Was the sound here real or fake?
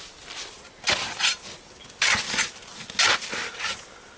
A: real